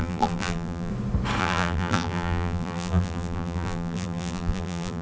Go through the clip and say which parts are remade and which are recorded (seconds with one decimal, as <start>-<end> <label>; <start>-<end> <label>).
0.0-0.9 remade; 0.9-1.4 recorded; 1.4-5.0 remade